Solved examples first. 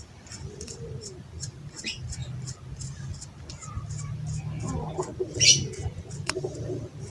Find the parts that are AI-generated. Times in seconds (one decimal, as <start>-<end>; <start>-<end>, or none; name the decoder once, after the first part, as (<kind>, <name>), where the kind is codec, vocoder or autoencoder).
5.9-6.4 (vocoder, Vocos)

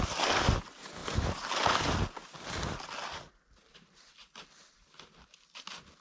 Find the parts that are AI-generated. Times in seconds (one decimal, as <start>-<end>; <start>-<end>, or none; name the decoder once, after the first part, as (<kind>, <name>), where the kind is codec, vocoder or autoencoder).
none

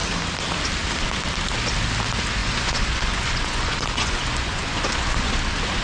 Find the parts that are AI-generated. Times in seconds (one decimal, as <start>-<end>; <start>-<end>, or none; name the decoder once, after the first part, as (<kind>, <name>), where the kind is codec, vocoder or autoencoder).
2.4-5.3 (vocoder, Vocos)